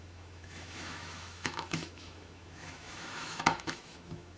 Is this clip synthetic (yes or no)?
yes